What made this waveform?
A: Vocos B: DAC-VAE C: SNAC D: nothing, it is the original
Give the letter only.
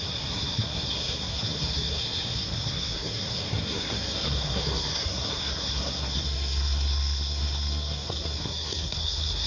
C